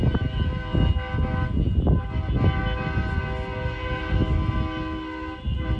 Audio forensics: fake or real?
real